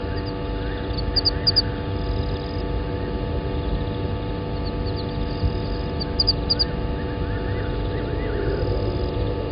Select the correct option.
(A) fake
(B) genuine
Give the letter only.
B